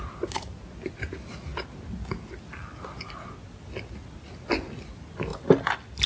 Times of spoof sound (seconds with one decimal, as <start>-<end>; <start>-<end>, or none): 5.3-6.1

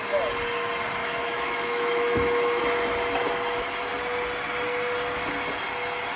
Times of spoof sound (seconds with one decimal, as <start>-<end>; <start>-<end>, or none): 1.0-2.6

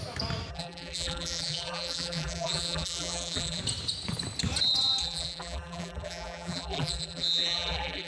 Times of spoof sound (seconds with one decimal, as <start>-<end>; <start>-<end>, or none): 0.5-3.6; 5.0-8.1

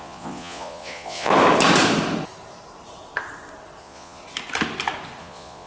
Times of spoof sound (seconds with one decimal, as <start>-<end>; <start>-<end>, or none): 0.0-1.3; 3.8-4.2; 5.2-5.7

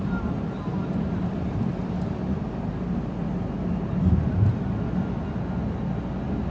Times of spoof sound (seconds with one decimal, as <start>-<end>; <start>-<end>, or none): none

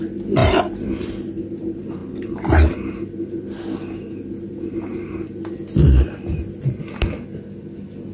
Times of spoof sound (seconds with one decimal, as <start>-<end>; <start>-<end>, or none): none

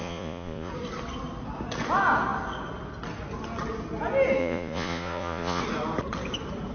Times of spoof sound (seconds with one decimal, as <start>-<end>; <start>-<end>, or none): 0.0-0.7; 4.4-5.6

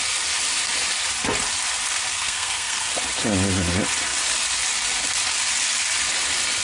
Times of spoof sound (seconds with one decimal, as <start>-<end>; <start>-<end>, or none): 2.1-2.9